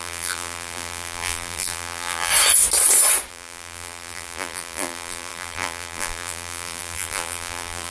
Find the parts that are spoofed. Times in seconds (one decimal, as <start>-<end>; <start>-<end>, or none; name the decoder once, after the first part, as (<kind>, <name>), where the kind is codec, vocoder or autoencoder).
0.0-2.3 (vocoder, BigVGAN v2); 3.3-7.9